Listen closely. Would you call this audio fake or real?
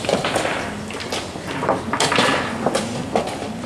real